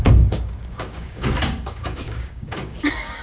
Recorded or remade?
remade